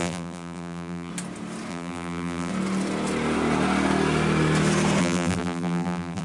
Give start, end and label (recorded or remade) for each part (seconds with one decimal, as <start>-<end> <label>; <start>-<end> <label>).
0.0-1.1 remade; 1.1-1.7 recorded; 1.7-2.5 remade; 2.5-5.0 recorded; 5.0-6.2 remade